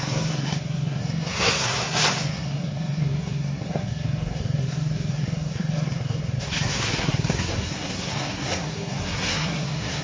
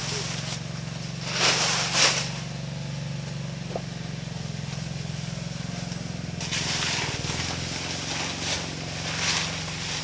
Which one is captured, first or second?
second